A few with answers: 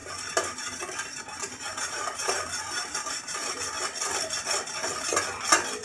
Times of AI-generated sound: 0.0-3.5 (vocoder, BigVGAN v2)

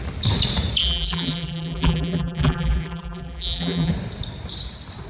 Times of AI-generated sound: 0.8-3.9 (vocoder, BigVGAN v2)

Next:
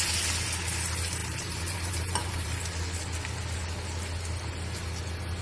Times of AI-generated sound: 1.2-2.6 (vocoder, BigVGAN v2)